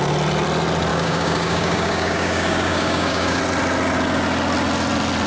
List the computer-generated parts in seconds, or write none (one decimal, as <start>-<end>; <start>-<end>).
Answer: 0.9-3.4